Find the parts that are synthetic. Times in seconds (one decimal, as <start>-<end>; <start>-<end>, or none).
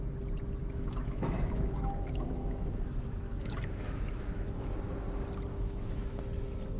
0.6-4.7; 5.5-6.2